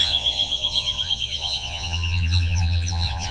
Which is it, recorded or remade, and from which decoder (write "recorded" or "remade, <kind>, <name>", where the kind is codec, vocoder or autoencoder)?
remade, vocoder, Vocos